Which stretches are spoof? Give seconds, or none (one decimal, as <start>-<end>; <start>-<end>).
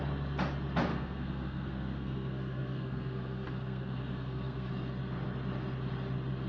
0.9-4.7